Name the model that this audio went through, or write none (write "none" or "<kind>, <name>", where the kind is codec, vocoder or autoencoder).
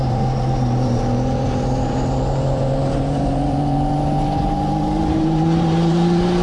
vocoder, BigVGAN v2